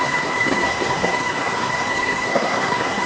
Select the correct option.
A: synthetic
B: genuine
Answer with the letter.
A